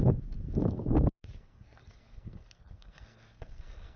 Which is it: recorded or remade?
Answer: remade